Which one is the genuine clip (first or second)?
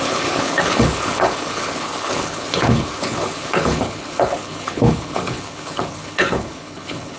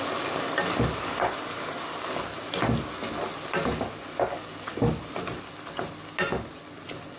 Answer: second